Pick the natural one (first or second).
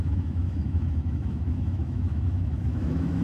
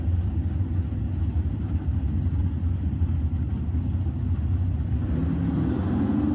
second